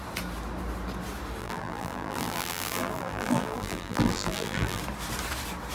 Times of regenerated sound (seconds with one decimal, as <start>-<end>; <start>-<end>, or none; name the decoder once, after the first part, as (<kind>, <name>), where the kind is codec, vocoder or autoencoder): 1.4-4.8 (vocoder, BigVGAN v2)